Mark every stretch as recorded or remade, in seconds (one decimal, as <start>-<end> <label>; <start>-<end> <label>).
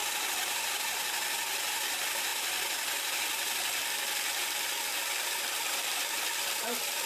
0.0-2.3 remade; 2.3-5.0 recorded; 5.0-7.1 remade